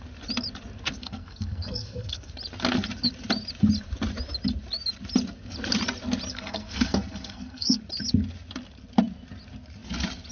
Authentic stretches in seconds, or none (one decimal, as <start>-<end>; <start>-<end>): 0.0-1.0; 2.3-6.3; 7.8-10.3